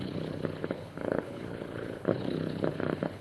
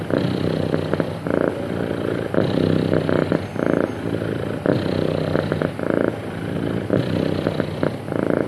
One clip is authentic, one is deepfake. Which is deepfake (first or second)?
first